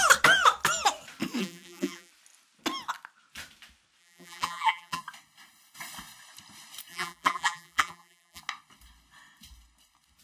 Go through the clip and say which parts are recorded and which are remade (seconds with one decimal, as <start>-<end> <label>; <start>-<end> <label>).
0.0-1.4 recorded; 1.4-2.1 remade; 2.1-4.0 recorded; 4.0-5.0 remade; 5.0-6.9 recorded; 6.9-8.4 remade; 8.4-10.2 recorded